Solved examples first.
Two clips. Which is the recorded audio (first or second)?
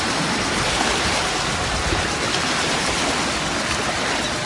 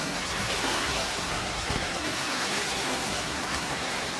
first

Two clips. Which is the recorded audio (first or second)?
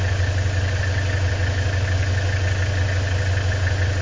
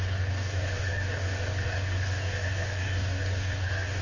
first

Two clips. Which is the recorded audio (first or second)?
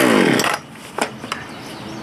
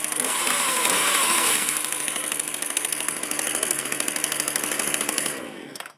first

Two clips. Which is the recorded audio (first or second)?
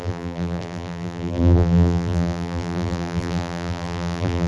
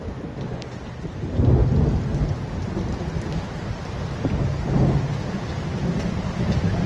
second